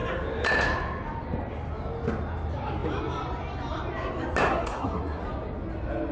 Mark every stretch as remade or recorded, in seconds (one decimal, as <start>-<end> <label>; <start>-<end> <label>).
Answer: 0.0-4.5 recorded; 4.5-5.2 remade; 5.2-6.1 recorded